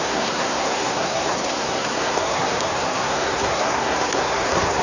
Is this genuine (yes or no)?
no